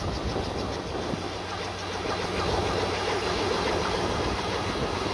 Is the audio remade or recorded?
recorded